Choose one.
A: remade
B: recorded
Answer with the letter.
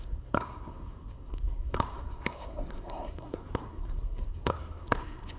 A